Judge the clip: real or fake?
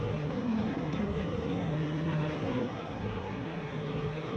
fake